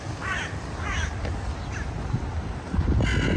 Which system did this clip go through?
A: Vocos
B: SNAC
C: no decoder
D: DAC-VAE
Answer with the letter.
C